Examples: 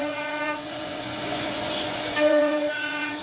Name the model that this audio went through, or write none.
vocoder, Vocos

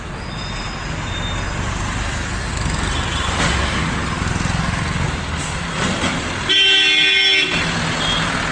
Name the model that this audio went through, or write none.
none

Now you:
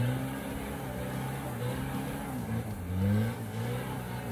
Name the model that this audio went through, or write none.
none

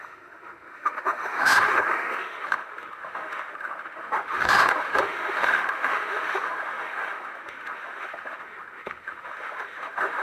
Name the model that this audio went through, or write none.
autoencoder, DAC-VAE